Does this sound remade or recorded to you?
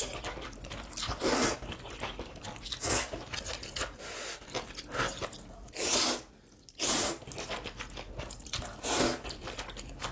recorded